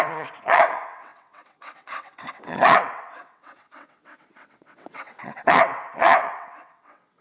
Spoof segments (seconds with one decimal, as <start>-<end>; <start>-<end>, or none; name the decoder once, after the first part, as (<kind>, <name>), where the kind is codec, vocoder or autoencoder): 0.0-7.2 (vocoder, WaveNeXt)